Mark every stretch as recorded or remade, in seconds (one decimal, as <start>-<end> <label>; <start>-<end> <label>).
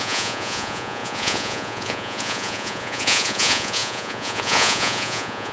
0.0-5.5 remade